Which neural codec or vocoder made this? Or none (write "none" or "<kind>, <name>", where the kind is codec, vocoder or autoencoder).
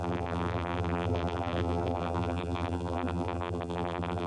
vocoder, BigVGAN v2